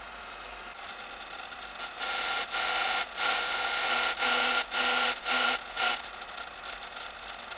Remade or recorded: recorded